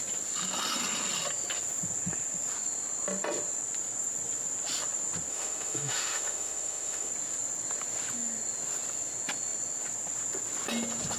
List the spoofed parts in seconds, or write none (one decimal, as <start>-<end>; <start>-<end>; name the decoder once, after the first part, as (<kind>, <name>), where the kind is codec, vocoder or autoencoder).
5.3-7.1 (autoencoder, DAC-VAE)